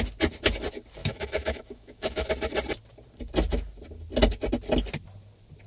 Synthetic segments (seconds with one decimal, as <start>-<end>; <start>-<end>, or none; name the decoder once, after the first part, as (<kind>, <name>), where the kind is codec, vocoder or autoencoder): 1.0-2.3 (autoencoder, DAC-VAE)